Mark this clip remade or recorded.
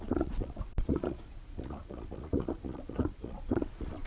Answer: remade